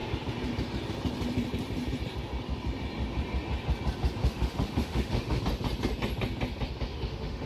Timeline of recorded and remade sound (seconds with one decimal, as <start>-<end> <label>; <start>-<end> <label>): 0.0-4.2 recorded; 4.2-5.4 remade; 5.4-6.9 recorded; 6.9-7.5 remade